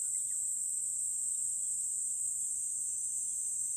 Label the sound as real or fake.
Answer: real